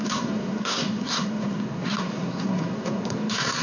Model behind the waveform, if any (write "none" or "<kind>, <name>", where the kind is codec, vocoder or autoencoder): codec, SNAC